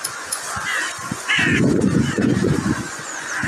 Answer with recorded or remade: remade